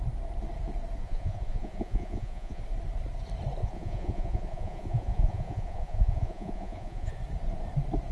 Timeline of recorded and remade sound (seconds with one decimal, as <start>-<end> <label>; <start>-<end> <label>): 0.0-1.0 recorded; 1.0-2.6 remade; 2.6-3.6 recorded; 3.6-7.2 remade; 7.2-8.1 recorded